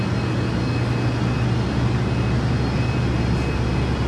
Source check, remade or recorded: recorded